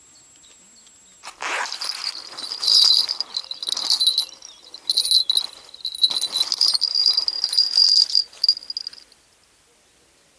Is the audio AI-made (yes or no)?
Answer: no